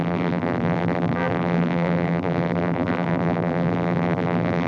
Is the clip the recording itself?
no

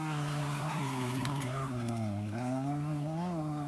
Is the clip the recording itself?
no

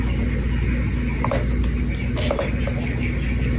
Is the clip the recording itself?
yes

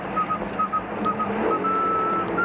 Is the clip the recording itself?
yes